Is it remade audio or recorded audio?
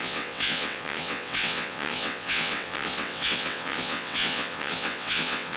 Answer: remade